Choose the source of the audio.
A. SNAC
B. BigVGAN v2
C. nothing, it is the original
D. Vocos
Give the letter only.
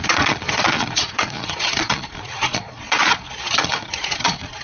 D